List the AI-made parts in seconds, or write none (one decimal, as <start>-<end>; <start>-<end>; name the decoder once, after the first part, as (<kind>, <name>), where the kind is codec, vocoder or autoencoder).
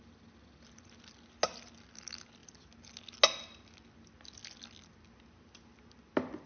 none